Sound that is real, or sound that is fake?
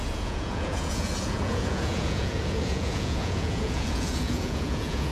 fake